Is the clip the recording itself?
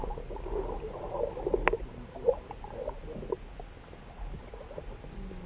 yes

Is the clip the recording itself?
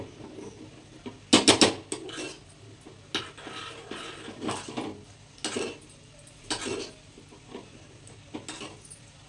yes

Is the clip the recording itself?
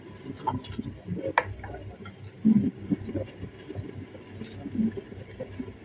yes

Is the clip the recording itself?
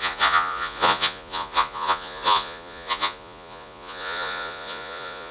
no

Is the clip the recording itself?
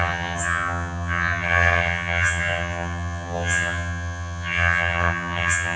no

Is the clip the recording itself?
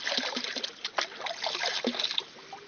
yes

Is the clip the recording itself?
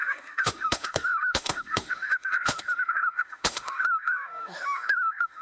no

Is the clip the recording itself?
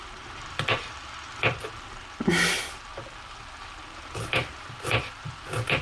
yes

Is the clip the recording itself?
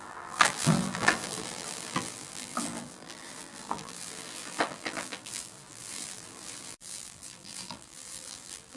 no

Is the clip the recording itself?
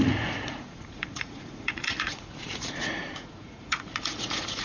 no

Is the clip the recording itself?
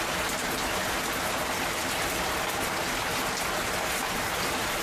yes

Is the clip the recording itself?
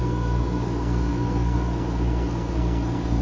no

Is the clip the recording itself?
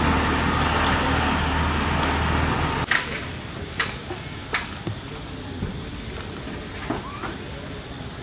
yes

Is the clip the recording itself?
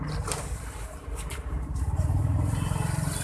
no